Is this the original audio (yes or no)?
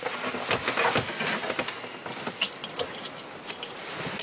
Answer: yes